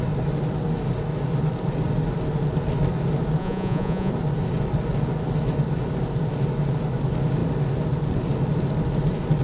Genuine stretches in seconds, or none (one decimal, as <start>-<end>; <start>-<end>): 0.0-3.4; 4.1-9.4